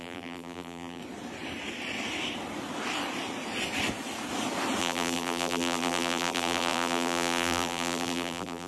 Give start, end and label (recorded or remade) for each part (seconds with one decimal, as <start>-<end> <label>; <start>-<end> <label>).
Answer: 0.0-1.0 remade; 1.0-4.8 recorded; 4.8-8.7 remade